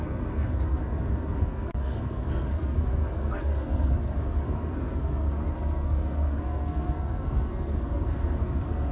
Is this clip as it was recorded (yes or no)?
no